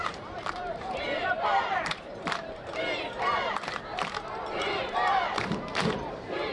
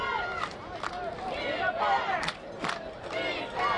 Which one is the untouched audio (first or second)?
second